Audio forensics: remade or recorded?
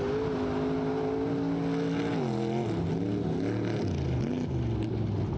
recorded